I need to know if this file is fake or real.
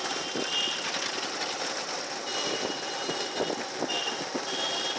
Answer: real